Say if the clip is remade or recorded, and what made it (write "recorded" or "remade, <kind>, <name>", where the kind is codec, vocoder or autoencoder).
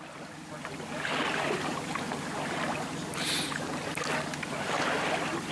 recorded